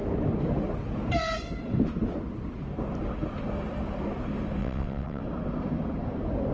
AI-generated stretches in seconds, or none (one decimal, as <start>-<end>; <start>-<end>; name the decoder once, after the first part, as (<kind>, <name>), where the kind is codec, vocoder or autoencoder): 4.6-5.2 (vocoder, WaveNeXt)